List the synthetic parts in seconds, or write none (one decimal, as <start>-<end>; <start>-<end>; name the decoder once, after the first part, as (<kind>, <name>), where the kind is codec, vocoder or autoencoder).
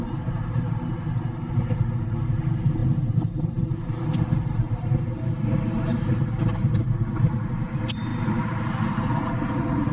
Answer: none